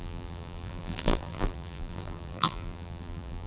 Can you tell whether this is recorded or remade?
remade